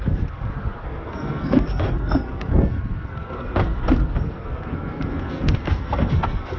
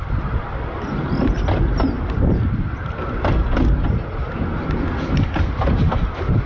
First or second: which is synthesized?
first